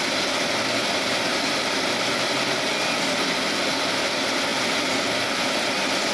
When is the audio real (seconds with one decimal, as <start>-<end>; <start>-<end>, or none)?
0.0-6.1